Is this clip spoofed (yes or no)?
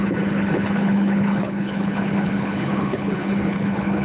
yes